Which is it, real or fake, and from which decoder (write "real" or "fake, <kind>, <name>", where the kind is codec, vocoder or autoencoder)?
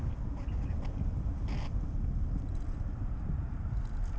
real